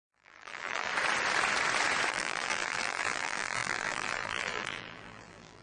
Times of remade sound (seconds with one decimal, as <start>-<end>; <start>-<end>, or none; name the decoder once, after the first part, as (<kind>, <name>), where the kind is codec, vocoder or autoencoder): 0.0-0.9 (vocoder, BigVGAN v2); 2.1-5.6